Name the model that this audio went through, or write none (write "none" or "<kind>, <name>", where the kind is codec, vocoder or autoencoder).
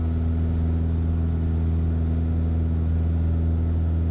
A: none